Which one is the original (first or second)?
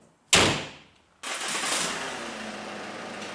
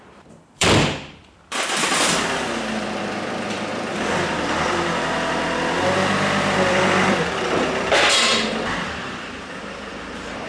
first